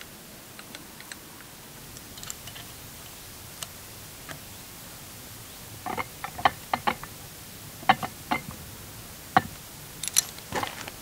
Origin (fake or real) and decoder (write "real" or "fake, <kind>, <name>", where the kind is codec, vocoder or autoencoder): real